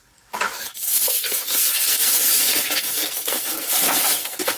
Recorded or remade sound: remade